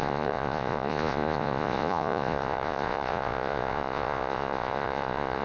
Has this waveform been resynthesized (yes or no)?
yes